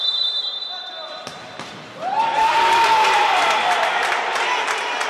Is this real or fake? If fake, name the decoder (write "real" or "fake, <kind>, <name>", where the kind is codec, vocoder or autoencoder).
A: fake, vocoder, BigVGAN v2